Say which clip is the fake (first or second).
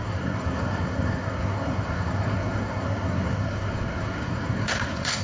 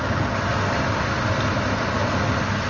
first